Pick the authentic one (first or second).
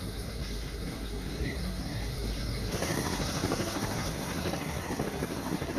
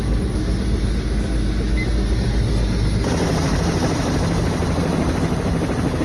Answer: second